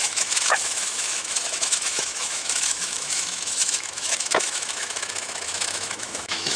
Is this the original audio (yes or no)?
no